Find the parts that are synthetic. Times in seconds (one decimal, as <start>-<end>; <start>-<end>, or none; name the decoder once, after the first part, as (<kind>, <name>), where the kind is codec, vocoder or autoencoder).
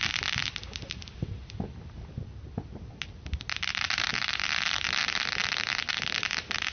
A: none